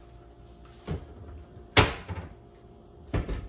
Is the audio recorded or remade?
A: recorded